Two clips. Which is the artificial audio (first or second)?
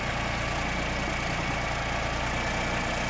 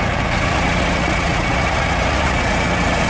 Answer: second